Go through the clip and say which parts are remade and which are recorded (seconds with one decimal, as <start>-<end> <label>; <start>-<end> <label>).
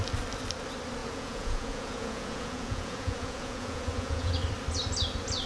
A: 0.0-1.0 recorded; 1.0-4.3 remade; 4.3-5.5 recorded